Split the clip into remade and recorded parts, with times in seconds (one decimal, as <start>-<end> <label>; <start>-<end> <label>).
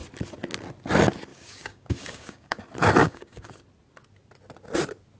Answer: 0.0-1.3 recorded; 1.3-2.6 remade; 2.6-3.0 recorded; 3.0-3.5 remade; 3.5-5.2 recorded